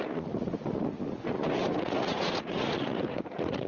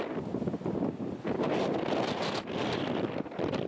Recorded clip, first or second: second